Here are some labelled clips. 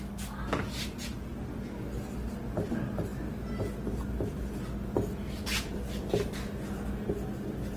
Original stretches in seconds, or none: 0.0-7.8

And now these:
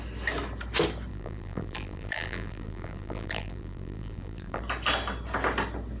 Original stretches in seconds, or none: 0.0-1.1; 4.6-6.0

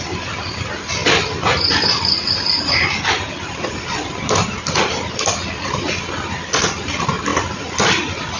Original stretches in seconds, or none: 1.0-1.7